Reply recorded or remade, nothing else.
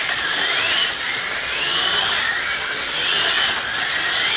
recorded